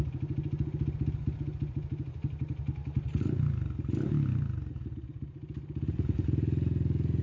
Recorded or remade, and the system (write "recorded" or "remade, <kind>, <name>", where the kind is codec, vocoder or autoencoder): recorded